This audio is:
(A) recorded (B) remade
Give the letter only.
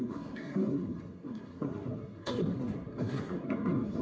B